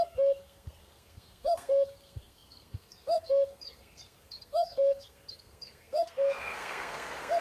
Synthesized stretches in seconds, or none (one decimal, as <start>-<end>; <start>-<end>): 0.0-7.4

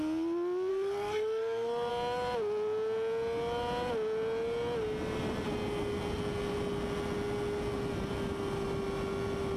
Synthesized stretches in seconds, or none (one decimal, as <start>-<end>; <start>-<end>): 0.7-1.9

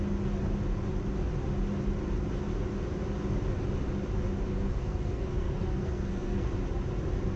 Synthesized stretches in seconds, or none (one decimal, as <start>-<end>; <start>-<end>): 4.5-6.5

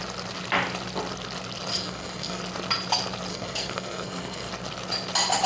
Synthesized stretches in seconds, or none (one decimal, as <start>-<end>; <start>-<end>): 1.7-2.4; 3.3-4.5

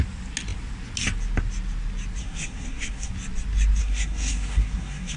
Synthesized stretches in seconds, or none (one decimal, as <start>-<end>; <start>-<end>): 2.2-3.1; 3.8-5.2

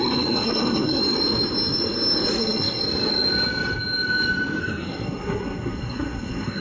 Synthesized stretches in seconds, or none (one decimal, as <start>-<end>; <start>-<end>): 0.0-1.0; 2.4-2.8; 4.6-6.6

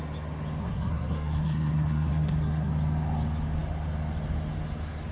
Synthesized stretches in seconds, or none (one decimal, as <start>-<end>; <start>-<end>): 0.6-2.7

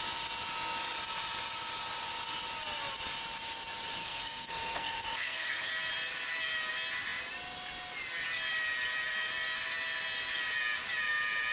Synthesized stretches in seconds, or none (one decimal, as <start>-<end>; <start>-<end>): 4.0-5.7